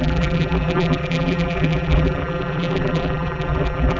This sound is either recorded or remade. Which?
remade